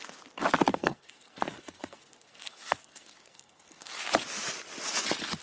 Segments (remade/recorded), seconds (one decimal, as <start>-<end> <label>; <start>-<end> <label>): 0.0-0.7 recorded; 0.7-3.9 remade; 3.9-5.4 recorded